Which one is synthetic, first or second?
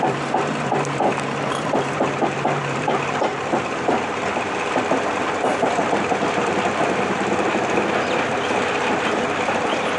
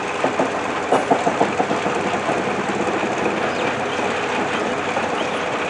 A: first